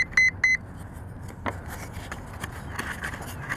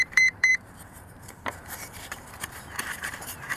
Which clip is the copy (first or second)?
second